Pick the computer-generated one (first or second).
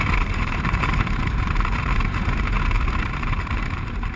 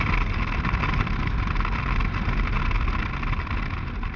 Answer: first